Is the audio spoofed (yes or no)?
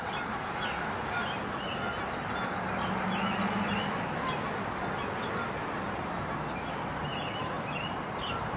no